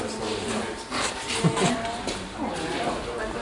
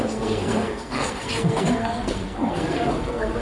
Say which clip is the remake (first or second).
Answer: second